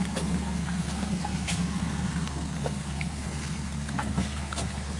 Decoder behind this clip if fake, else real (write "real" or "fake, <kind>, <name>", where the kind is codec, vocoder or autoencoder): fake, codec, SNAC